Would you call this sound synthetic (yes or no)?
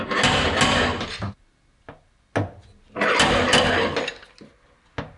no